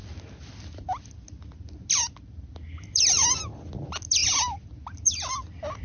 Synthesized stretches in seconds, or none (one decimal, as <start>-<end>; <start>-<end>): none